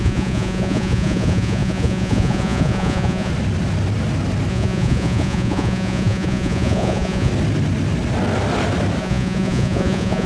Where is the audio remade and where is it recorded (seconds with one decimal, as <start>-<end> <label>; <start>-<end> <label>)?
0.0-3.3 remade; 3.3-4.5 recorded; 4.5-7.3 remade; 7.3-9.0 recorded; 9.0-10.3 remade